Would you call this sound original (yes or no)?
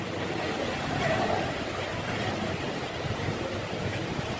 yes